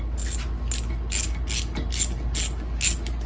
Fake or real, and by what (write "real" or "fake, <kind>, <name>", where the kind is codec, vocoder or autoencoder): real